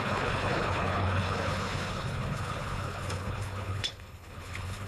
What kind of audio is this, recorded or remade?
remade